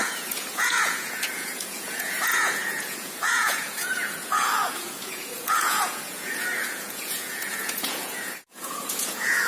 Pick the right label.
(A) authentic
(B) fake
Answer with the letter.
B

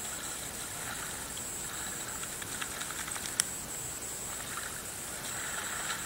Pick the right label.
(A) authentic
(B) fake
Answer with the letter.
A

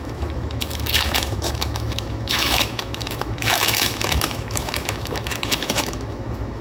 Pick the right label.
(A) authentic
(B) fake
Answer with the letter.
B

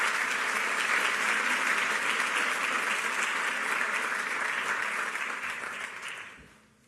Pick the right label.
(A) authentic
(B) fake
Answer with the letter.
A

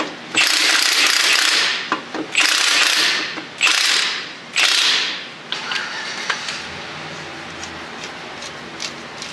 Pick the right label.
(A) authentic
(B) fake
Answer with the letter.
A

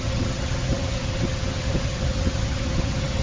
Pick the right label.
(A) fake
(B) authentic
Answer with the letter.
A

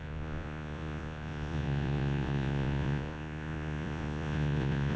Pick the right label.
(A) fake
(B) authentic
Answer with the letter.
A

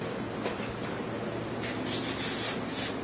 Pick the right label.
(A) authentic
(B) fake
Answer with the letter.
A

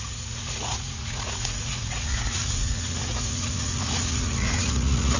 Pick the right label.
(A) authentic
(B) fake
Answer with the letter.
B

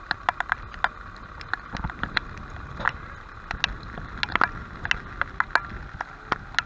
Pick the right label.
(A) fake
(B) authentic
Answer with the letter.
B